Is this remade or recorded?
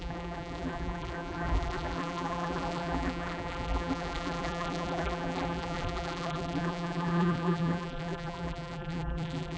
remade